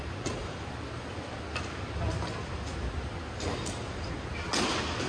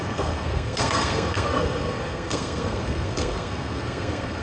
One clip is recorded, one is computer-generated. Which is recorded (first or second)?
first